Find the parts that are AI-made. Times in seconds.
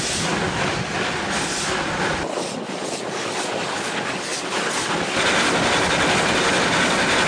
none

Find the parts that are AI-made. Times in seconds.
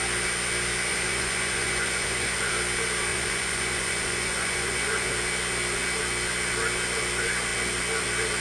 0.9-2.5 (vocoder, Vocos); 3.1-5.1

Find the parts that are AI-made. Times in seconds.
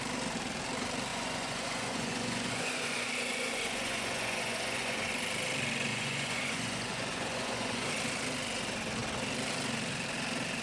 1.1-5.1 (vocoder, Vocos); 5.9-7.9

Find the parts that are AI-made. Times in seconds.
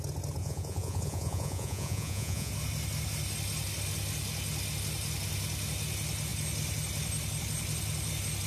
0.4-2.5 (vocoder, Vocos)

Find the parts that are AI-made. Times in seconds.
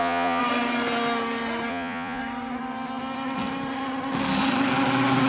0.0-0.4 (vocoder, Vocos); 1.7-2.2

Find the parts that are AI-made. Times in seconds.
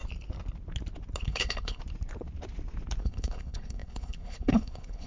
1.2-1.8 (codec, HILCodec); 3.0-5.1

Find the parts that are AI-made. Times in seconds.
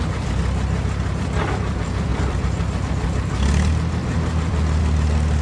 4.0-4.8 (vocoder, BigVGAN v2)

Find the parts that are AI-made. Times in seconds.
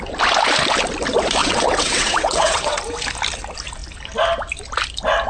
1.4-2.8 (vocoder, WaveNeXt)